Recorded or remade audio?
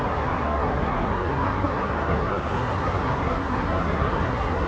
remade